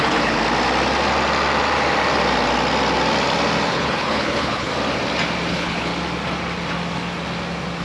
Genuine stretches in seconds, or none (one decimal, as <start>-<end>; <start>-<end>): 0.4-3.7; 4.7-5.5; 5.9-7.8